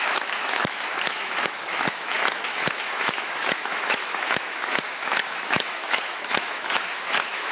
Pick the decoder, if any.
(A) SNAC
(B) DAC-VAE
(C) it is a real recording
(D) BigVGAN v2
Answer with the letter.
B